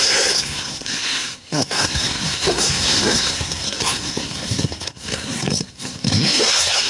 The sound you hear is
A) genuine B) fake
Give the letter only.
B